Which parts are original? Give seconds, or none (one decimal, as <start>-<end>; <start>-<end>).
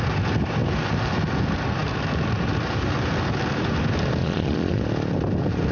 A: 0.0-4.2; 4.8-5.7